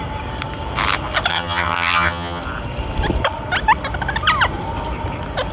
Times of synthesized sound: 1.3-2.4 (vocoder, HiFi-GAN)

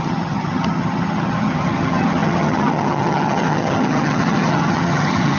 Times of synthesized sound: 0.0-5.4 (vocoder, HiFi-GAN)

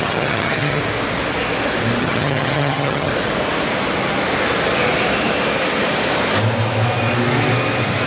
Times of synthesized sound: 0.0-0.8 (vocoder, HiFi-GAN); 2.0-3.1

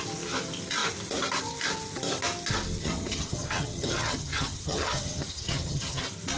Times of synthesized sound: 2.8-6.0 (vocoder, HiFi-GAN)

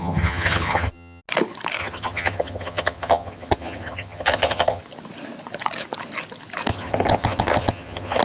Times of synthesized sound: 0.0-1.2 (vocoder, HiFi-GAN); 1.8-4.8; 6.7-8.2

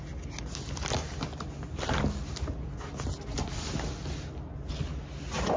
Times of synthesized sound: none

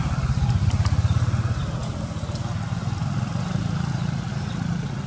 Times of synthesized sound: none